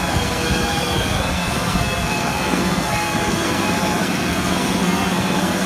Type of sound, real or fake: fake